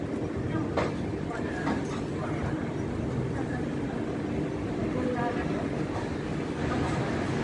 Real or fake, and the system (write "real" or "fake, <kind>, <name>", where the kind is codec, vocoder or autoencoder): real